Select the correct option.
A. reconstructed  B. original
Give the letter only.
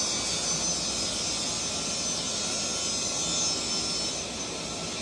B